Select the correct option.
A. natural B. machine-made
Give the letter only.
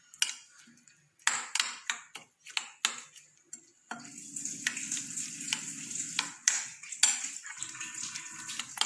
A